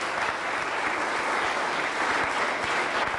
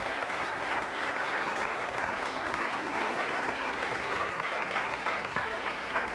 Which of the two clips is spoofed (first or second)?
second